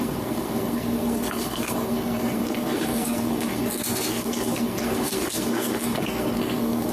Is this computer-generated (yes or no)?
yes